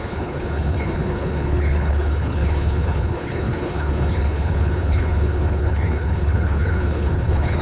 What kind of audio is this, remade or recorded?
remade